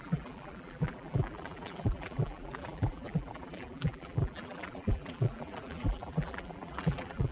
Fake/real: fake